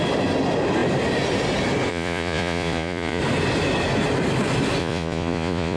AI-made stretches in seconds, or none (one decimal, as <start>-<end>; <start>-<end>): 1.9-3.2; 4.8-5.8